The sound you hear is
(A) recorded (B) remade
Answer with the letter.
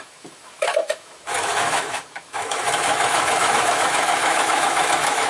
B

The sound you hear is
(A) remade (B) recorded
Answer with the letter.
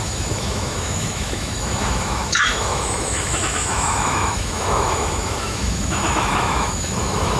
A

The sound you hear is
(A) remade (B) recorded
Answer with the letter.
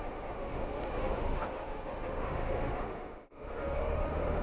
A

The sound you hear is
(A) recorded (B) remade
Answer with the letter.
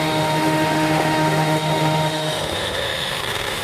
B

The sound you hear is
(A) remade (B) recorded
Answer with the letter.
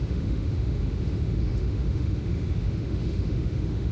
A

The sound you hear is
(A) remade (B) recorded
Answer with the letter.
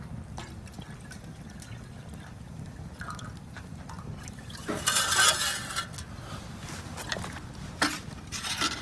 B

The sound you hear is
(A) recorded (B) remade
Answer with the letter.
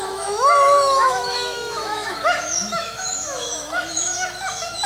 B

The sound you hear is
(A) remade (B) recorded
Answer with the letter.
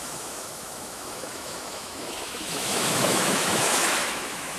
A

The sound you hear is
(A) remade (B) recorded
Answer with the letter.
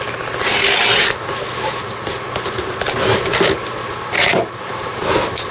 B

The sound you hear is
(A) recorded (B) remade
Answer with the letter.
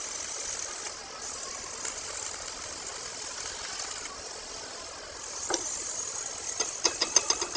A